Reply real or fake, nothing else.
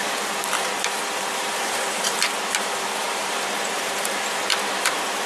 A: fake